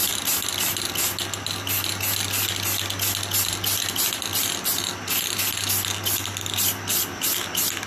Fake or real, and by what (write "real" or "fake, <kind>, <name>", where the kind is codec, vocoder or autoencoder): real